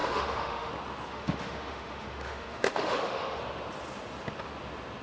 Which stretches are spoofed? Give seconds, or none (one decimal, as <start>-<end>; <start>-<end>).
0.0-0.7; 1.1-3.4